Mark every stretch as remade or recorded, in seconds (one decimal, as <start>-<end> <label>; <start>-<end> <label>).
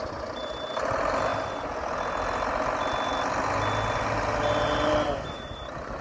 0.0-1.3 remade; 1.3-4.9 recorded; 4.9-6.0 remade